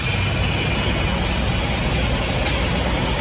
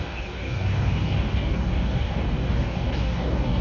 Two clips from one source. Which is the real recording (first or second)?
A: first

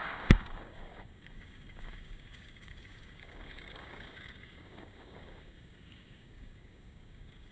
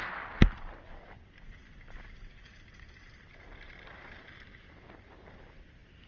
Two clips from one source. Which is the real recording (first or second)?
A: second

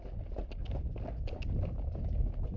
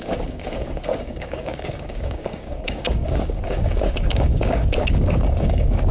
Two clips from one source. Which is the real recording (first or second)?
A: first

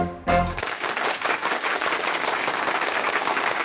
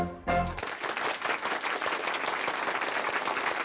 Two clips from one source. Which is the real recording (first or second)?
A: second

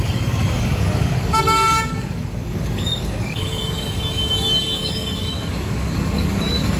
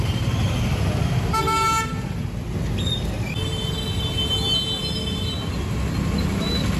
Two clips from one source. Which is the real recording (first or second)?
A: second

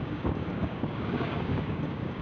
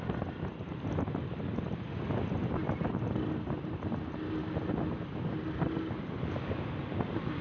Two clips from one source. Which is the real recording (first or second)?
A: second